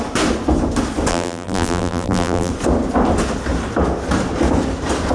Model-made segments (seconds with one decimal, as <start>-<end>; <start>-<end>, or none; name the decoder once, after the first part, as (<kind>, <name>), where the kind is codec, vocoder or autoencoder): 1.1-2.5 (vocoder, BigVGAN v2)